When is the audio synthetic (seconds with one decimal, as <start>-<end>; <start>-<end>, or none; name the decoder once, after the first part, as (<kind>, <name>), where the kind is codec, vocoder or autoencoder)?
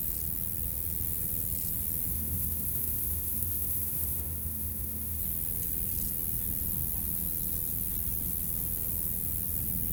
2.1-5.2 (autoencoder, DAC-VAE)